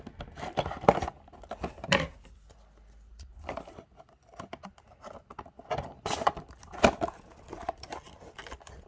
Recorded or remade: recorded